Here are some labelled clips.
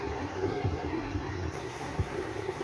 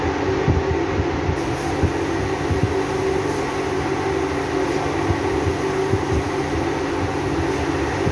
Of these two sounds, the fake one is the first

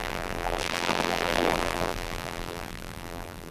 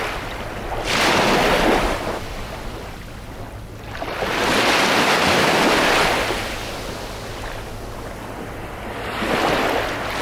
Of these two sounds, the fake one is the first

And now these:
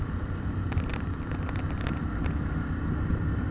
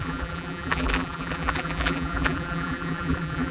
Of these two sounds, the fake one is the second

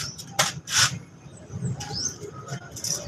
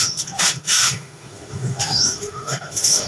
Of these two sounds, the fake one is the second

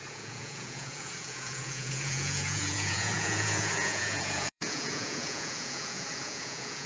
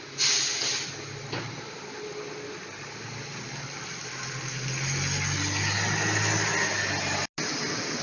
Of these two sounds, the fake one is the first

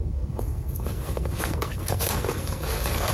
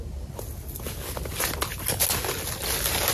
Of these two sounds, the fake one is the first